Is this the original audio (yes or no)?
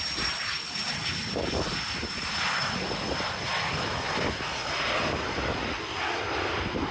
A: yes